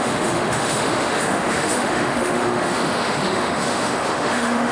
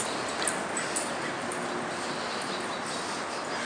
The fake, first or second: first